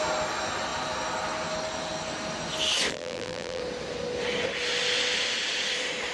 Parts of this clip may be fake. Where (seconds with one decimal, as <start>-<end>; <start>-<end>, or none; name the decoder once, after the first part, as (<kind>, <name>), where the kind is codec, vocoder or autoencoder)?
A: 2.9-3.6 (vocoder, BigVGAN v2)